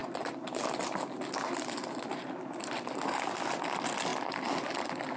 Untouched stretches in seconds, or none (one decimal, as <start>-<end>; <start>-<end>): 0.0-2.1; 3.0-5.2